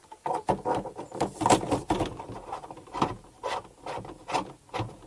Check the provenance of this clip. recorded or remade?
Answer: recorded